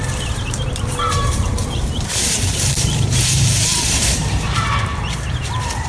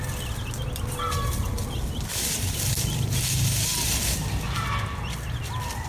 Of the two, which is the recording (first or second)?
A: second